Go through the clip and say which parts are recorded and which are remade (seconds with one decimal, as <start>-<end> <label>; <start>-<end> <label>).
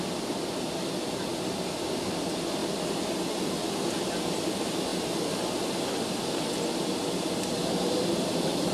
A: 0.0-7.6 recorded; 7.6-8.1 remade; 8.1-8.7 recorded